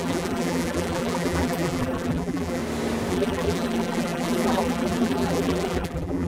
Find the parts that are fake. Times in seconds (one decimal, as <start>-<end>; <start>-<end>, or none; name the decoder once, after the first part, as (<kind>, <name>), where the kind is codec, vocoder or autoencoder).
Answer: 0.0-2.6 (vocoder, BigVGAN v2); 3.1-6.3

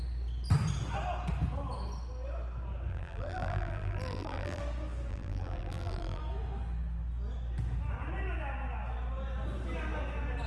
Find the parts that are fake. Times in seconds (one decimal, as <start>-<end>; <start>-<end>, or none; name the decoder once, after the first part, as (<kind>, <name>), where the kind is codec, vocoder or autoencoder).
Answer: 2.9-4.6 (vocoder, BigVGAN v2); 5.1-6.2

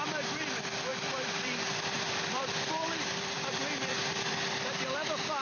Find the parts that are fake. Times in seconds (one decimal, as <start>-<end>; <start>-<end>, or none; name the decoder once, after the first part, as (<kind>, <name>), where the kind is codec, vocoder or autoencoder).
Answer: 0.9-4.1 (vocoder, BigVGAN v2)

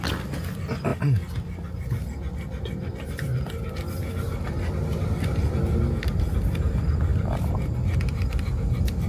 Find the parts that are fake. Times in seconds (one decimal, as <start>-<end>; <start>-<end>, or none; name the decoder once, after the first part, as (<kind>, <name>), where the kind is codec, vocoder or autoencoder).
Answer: none

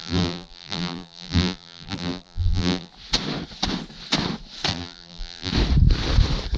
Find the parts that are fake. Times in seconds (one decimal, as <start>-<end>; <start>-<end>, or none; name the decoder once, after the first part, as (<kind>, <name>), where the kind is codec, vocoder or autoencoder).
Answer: 0.0-2.9 (vocoder, BigVGAN v2); 4.7-5.5

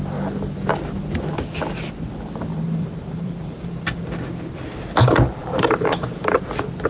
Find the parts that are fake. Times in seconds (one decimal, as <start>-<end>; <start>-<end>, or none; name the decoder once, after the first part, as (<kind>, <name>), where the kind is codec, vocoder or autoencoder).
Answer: 2.5-3.7 (vocoder, BigVGAN v2); 5.4-6.5